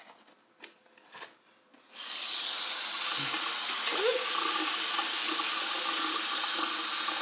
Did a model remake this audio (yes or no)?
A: no